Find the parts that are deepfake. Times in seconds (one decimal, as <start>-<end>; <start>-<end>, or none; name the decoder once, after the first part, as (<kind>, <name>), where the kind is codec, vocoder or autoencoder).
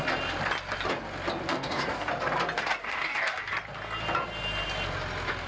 1.5-2.1 (codec, DAC); 2.8-3.5